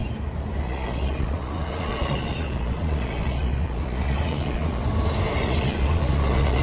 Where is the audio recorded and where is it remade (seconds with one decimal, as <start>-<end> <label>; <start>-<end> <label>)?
0.0-0.6 recorded; 0.6-4.8 remade; 4.8-5.4 recorded; 5.4-6.6 remade

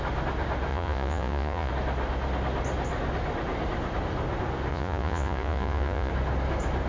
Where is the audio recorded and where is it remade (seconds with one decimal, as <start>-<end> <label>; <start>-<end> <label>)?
0.0-0.7 recorded; 0.7-1.7 remade; 1.7-4.7 recorded; 4.7-6.1 remade; 6.1-6.9 recorded

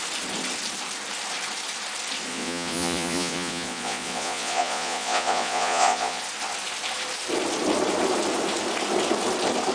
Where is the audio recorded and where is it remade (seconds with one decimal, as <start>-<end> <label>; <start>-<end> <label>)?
0.0-2.3 recorded; 2.3-6.2 remade; 6.2-9.7 recorded

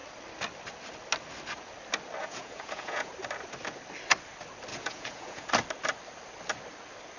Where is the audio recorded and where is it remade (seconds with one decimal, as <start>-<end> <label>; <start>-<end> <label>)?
0.0-2.2 recorded; 2.2-3.1 remade; 3.1-4.7 recorded; 4.7-5.5 remade; 5.5-7.2 recorded

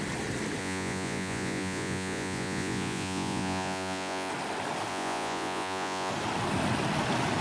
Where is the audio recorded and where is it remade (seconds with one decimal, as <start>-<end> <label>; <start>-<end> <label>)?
0.0-0.6 recorded; 0.6-4.3 remade; 4.3-4.9 recorded; 4.9-6.1 remade; 6.1-7.4 recorded